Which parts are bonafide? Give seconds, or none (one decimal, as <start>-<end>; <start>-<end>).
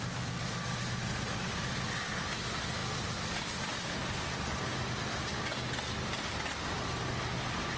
0.0-7.8